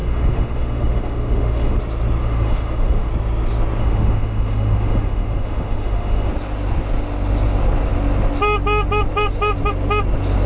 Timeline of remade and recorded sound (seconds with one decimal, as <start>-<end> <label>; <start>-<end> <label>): 0.0-1.8 remade; 1.8-2.2 recorded; 2.2-3.1 remade; 3.1-3.8 recorded; 3.8-6.3 remade; 6.3-10.5 recorded